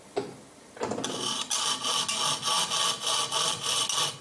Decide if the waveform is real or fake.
real